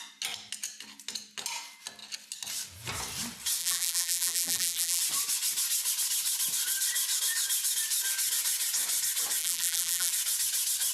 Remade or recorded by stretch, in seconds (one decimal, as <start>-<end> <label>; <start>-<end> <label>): 0.0-3.6 recorded; 3.6-5.0 remade; 5.0-9.4 recorded; 9.4-10.1 remade; 10.1-10.9 recorded